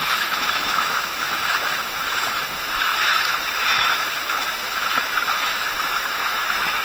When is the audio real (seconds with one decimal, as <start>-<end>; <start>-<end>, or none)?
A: none